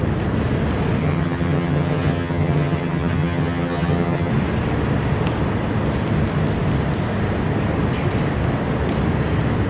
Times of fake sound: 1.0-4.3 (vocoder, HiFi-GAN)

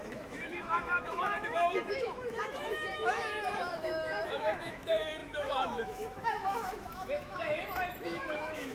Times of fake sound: 0.0-8.7 (autoencoder, DAC-VAE)

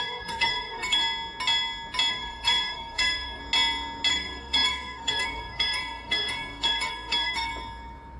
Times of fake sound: 0.0-1.0 (codec, SNAC); 2.1-3.4; 4.1-7.5

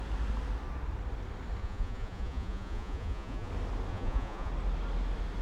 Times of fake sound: 1.6-3.5 (vocoder, Vocos); 3.9-4.5

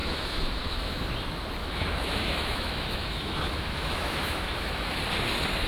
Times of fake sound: 0.0-1.1 (autoencoder, DAC-VAE); 1.6-5.0

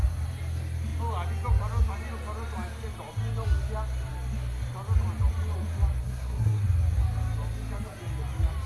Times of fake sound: 6.0-6.6 (codec, SNAC)

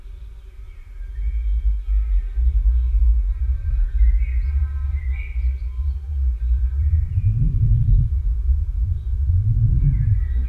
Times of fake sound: 3.1-3.7 (vocoder, BigVGAN v2); 6.1-7.8; 8.8-10.1